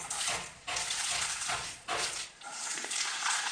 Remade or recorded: remade